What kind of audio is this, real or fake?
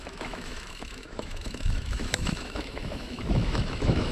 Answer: fake